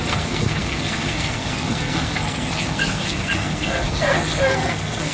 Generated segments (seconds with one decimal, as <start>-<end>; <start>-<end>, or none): 0.0-5.1